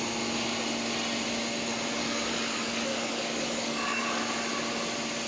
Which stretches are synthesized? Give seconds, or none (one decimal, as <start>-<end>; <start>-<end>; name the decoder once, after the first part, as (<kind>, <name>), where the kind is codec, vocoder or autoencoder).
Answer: 2.0-4.2 (codec, DAC)